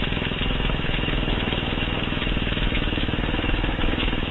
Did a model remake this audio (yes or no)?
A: yes